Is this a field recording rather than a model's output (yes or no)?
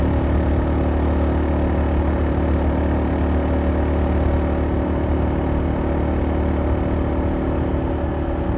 yes